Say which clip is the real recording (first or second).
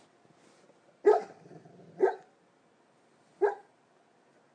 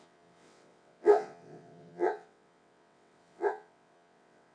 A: first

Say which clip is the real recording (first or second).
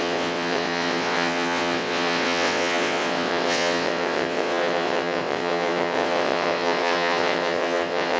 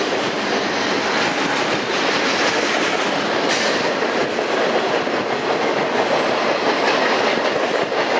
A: second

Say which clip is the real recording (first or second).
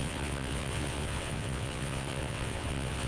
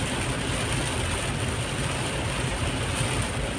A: second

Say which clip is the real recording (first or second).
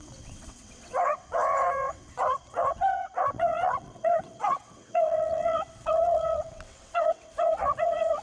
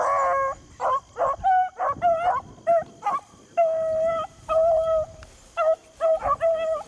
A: second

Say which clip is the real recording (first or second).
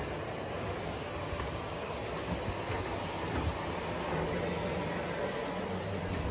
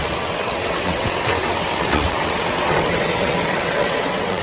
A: first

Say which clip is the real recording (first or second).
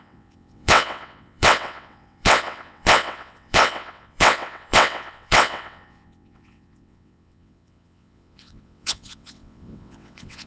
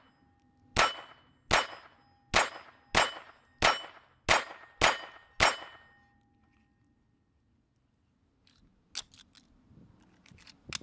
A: second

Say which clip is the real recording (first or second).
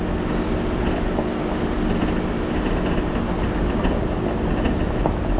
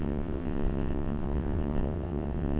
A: first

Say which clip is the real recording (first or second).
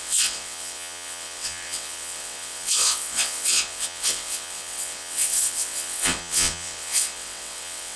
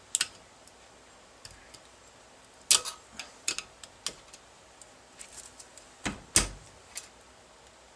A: second